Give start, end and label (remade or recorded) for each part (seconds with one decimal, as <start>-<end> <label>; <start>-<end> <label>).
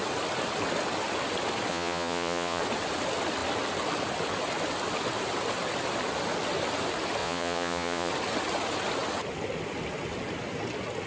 0.0-1.7 recorded; 1.7-2.6 remade; 2.6-7.2 recorded; 7.2-8.1 remade; 8.1-11.1 recorded